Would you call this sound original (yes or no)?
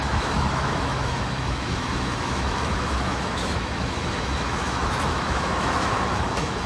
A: no